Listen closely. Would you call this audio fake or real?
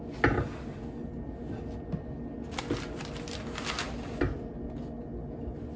real